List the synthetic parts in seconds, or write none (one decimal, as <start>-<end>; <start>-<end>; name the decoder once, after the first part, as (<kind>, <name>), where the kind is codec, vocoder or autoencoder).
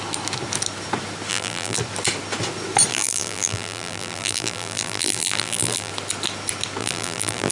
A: 1.3-1.8 (vocoder, BigVGAN v2); 2.9-5.9; 6.8-7.5